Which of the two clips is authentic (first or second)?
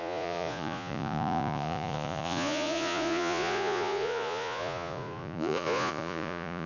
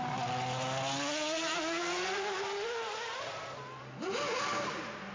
second